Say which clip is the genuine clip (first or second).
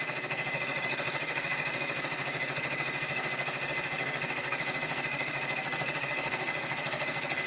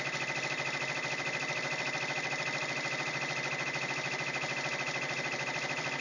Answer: second